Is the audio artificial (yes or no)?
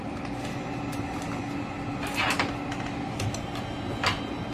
no